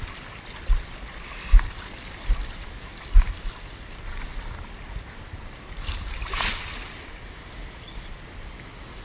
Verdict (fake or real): real